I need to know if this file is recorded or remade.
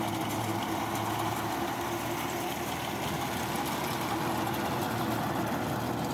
recorded